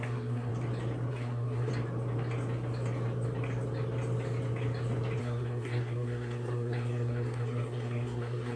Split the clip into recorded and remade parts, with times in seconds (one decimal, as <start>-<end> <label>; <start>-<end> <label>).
0.0-0.5 remade; 0.5-1.1 recorded; 1.1-1.7 remade; 1.7-5.2 recorded; 5.2-8.6 remade